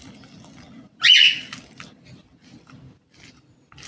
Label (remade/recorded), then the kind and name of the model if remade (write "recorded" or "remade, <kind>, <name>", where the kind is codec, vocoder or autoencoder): recorded